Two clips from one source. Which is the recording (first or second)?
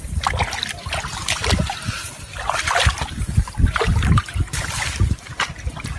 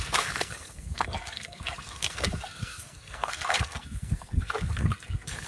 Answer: first